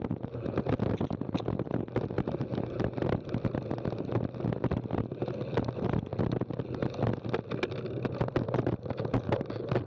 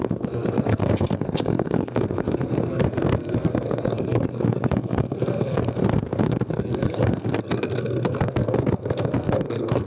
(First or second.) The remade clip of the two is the second